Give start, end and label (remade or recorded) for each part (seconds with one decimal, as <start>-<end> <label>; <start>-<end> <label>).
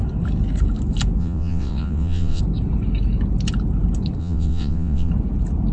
0.0-1.2 recorded; 1.2-2.4 remade; 2.4-4.2 recorded; 4.2-5.1 remade; 5.1-5.7 recorded